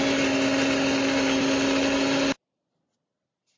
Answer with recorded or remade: recorded